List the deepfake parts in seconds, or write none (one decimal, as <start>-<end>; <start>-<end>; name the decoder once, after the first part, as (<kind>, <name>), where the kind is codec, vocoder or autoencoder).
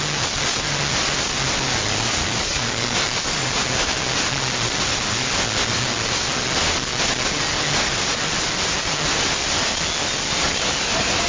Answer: 2.2-3.5 (codec, DAC)